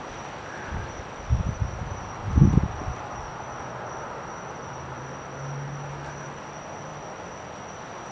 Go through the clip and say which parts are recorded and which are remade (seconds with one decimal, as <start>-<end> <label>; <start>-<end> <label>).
0.0-8.1 recorded